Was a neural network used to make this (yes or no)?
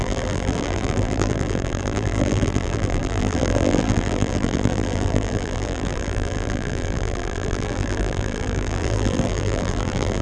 yes